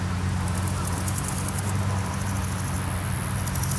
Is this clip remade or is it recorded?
recorded